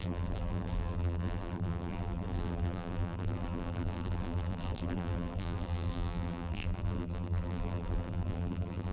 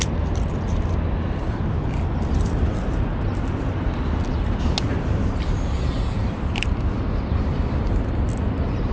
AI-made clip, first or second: first